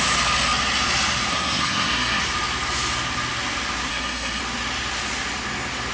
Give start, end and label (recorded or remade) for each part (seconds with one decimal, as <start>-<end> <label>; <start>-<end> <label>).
0.0-1.3 recorded; 1.3-2.2 remade; 2.2-3.9 recorded; 3.9-4.4 remade; 4.4-5.9 recorded